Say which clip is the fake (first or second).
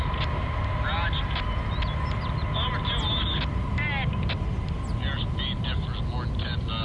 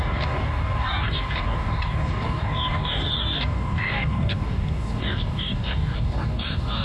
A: second